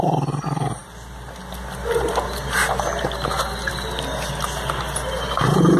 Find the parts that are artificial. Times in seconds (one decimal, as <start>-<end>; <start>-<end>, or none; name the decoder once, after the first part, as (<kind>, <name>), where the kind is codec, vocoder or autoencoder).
none